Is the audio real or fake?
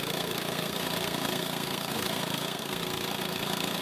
fake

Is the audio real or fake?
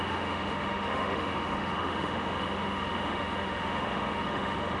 fake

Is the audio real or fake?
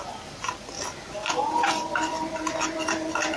real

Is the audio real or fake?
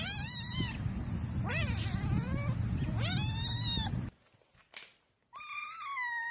real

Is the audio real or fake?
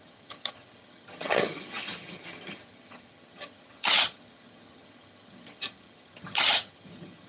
fake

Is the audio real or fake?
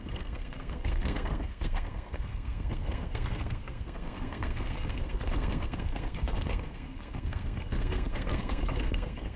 fake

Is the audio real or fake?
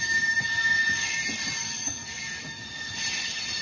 real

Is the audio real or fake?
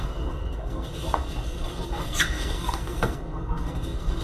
fake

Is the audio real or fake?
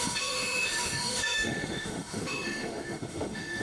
fake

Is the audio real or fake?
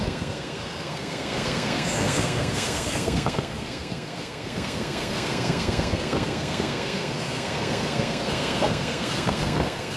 fake